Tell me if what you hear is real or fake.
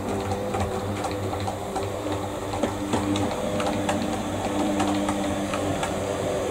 fake